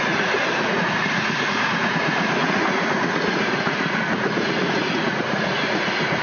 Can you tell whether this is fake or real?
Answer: fake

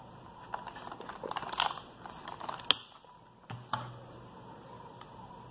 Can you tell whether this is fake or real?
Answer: real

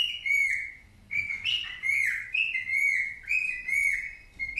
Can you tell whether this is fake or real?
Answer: fake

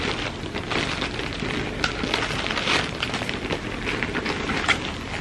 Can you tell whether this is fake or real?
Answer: real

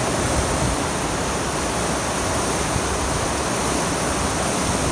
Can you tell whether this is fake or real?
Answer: real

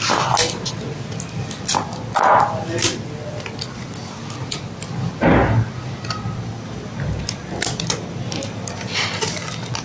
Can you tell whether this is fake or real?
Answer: real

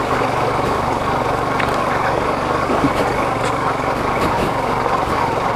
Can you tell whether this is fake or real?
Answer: fake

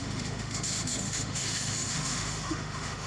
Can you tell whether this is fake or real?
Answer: fake